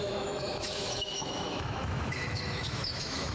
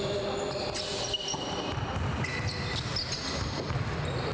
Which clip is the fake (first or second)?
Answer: first